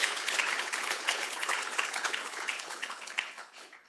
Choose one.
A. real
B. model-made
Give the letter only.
B